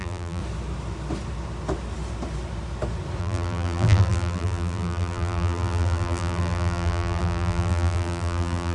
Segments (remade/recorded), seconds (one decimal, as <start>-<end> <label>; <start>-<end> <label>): 0.0-0.4 remade; 0.4-3.2 recorded; 3.2-8.7 remade